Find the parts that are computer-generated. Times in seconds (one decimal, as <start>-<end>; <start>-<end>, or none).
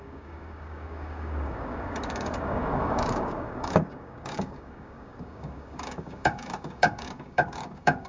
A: 0.0-8.1